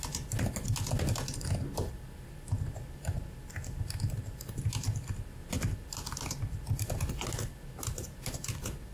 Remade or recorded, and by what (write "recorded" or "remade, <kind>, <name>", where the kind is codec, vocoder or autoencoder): recorded